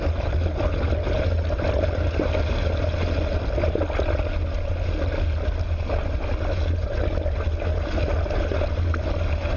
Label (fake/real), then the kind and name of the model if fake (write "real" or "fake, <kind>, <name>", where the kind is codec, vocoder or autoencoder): real